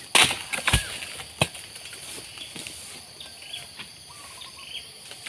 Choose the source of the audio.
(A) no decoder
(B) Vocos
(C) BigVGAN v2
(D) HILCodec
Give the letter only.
A